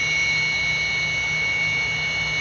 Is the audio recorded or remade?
recorded